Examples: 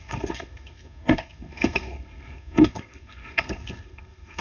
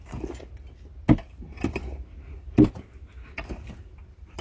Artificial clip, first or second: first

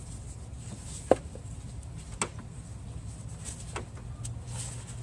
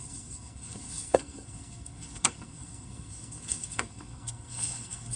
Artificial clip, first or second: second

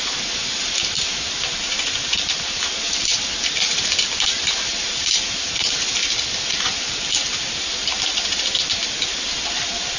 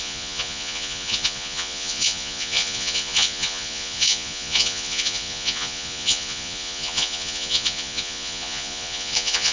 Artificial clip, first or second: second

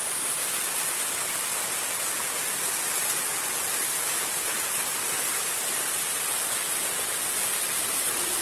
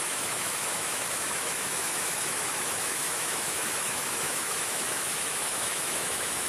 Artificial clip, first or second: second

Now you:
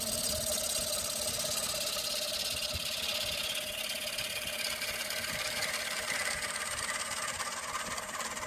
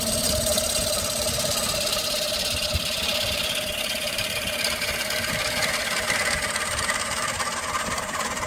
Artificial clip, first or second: second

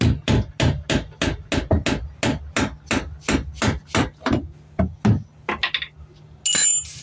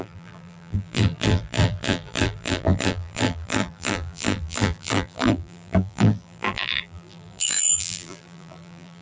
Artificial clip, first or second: second